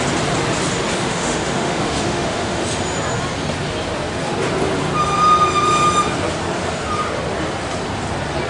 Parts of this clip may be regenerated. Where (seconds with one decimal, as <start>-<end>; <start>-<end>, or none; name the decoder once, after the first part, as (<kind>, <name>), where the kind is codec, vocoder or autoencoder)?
0.9-2.6 (autoencoder, DAC-VAE)